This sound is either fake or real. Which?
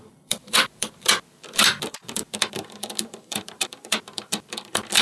fake